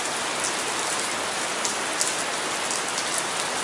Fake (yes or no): no